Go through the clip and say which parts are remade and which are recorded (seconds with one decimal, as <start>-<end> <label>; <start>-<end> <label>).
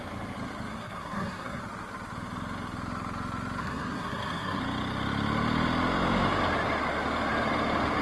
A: 0.0-0.7 recorded; 0.7-1.6 remade; 1.6-3.6 recorded; 3.6-4.6 remade; 4.6-8.0 recorded